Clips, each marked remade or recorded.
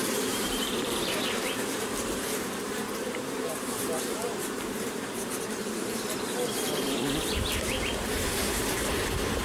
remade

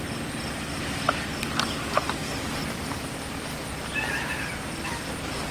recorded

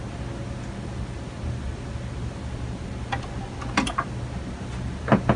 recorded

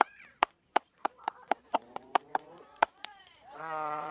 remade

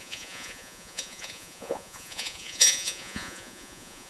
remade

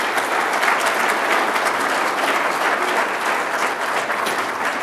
recorded